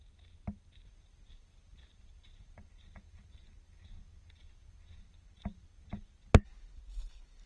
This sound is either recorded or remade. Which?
recorded